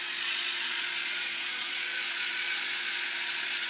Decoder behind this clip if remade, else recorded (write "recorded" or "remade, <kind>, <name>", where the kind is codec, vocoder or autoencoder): remade, vocoder, Vocos